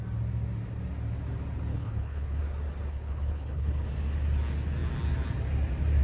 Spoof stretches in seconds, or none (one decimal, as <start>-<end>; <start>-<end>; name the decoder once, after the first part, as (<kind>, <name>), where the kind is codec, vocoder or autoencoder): 1.7-2.4 (codec, HILCodec); 2.9-3.8